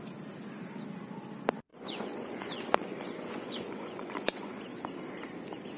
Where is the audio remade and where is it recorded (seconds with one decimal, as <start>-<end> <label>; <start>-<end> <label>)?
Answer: 0.0-1.7 recorded; 1.7-4.6 remade; 4.6-5.8 recorded